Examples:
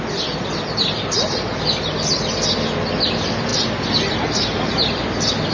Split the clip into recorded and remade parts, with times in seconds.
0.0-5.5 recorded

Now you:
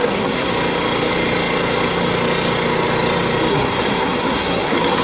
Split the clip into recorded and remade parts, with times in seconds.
0.0-0.5 remade; 0.5-3.5 recorded; 3.5-5.0 remade

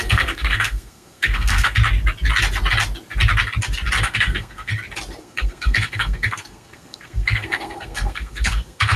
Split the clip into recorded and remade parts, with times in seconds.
0.0-1.8 remade; 1.8-4.0 recorded; 4.0-4.7 remade; 4.7-5.2 recorded; 5.2-9.0 remade